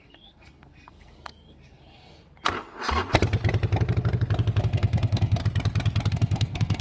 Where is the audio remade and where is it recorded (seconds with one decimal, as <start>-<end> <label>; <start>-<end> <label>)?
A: 0.0-2.2 remade; 2.2-4.6 recorded; 4.6-5.4 remade; 5.4-6.1 recorded; 6.1-6.8 remade